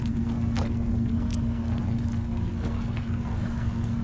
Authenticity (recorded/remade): remade